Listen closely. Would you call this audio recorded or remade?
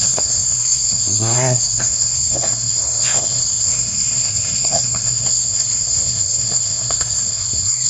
remade